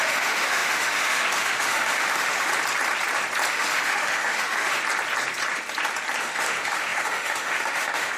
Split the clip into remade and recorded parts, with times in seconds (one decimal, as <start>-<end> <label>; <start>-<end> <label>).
0.0-2.5 remade; 2.5-3.5 recorded; 3.5-4.8 remade; 4.8-6.2 recorded; 6.2-8.2 remade